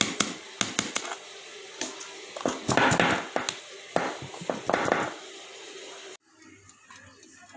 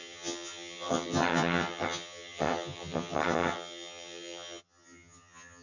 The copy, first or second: second